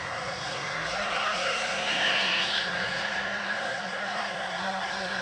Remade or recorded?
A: remade